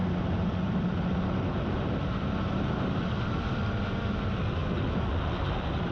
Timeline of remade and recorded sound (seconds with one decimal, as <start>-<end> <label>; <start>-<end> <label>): 0.0-4.6 remade; 4.6-5.3 recorded; 5.3-5.9 remade